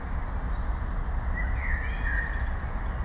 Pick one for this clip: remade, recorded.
recorded